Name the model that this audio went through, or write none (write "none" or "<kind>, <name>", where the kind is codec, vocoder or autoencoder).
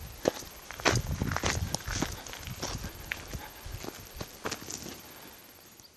none